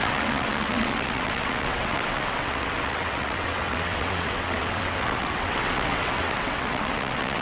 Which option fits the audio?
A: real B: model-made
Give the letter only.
B